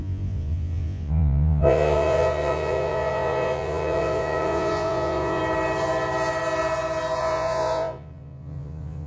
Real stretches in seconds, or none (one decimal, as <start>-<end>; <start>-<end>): 5.4-7.2